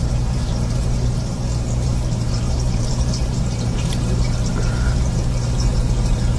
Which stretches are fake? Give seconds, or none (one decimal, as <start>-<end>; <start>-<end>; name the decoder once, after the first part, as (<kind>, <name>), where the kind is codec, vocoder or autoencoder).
0.0-6.4 (vocoder, BigVGAN v2)